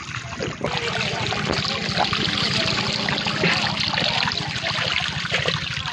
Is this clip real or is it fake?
real